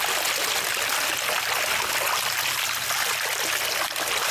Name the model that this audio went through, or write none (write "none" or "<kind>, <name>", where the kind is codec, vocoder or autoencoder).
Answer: none